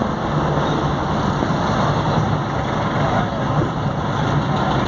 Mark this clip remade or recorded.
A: recorded